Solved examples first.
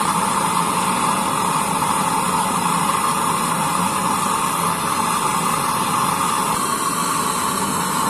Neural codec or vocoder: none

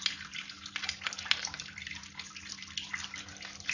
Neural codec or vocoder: none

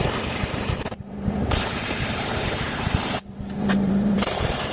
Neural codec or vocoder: vocoder, BigVGAN v2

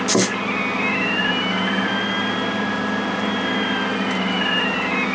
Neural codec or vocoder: none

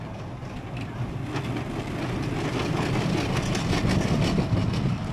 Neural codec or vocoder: none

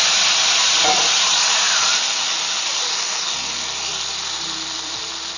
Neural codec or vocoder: none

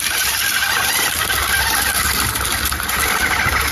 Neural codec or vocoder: vocoder, BigVGAN v2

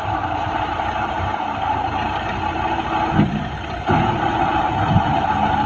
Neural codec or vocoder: vocoder, BigVGAN v2